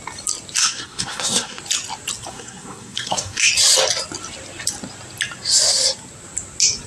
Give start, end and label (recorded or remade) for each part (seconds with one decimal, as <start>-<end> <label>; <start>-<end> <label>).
0.0-0.6 recorded; 0.6-1.6 remade; 1.6-2.3 recorded; 2.3-3.5 remade; 3.5-6.9 recorded